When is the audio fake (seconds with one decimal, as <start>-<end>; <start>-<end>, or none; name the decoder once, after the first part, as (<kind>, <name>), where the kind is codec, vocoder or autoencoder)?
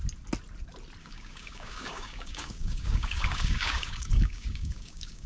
1.0-5.3 (codec, DAC)